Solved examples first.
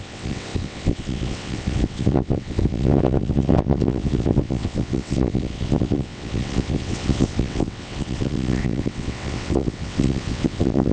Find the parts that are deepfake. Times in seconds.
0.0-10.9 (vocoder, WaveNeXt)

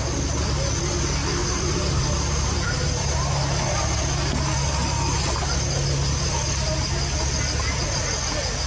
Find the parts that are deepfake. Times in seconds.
1.4-3.3 (vocoder, BigVGAN v2)

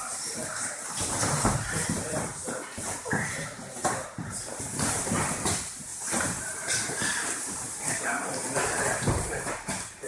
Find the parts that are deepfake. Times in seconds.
0.0-10.1 (vocoder, BigVGAN v2)

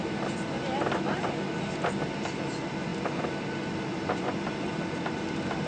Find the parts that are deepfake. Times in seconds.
0.0-1.0 (vocoder, BigVGAN v2); 2.9-4.7

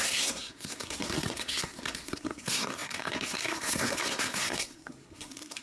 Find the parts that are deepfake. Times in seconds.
0.0-5.6 (codec, SNAC)

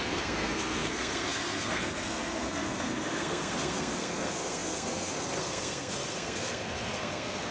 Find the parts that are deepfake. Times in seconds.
0.0-7.5 (codec, SNAC)

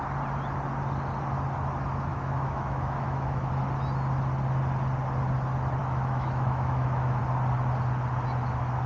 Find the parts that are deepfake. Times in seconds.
2.1-3.5 (autoencoder, DAC-VAE); 5.8-7.2

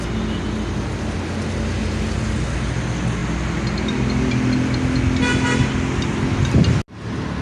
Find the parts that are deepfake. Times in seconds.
none